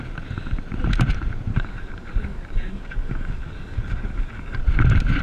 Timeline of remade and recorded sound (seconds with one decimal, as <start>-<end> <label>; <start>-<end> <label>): 0.0-1.5 recorded; 1.5-4.6 remade; 4.6-5.2 recorded

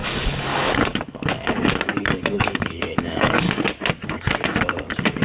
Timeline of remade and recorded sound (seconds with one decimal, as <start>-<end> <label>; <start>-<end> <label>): 0.0-1.0 remade; 1.0-1.9 recorded; 1.9-3.5 remade; 3.5-5.2 recorded

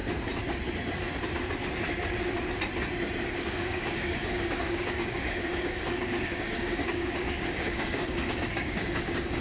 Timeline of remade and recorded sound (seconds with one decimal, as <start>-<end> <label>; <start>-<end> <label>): 0.0-3.2 recorded; 3.2-9.4 remade

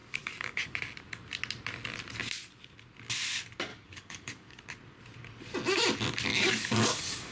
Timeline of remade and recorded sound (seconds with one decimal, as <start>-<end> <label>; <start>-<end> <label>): 0.0-0.7 remade; 0.7-3.7 recorded; 3.7-4.6 remade; 4.6-6.3 recorded; 6.3-7.3 remade

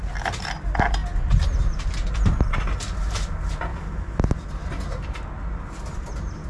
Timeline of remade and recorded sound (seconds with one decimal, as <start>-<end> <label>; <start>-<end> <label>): 0.0-6.5 recorded

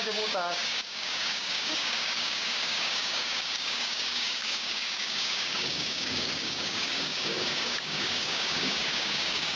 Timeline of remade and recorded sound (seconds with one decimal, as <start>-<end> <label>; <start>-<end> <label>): 0.0-9.6 remade